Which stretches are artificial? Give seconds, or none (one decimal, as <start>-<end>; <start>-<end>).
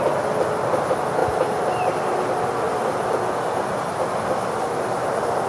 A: 1.2-2.3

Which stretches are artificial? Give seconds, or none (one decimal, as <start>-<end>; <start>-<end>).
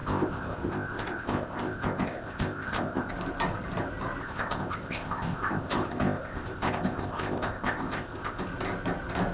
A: 0.0-3.1; 4.2-8.4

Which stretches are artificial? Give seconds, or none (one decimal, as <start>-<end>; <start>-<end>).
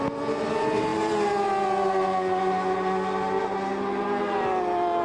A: none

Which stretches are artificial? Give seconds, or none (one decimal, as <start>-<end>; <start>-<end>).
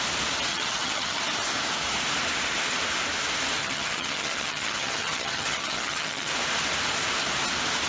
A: 0.5-1.2; 3.6-6.3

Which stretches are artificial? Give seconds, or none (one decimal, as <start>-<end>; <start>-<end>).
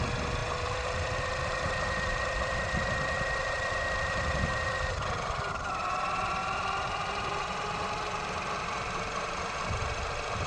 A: 6.4-9.6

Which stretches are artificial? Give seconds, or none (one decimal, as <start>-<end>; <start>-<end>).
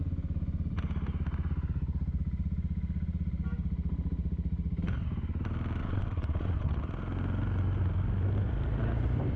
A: 5.8-6.8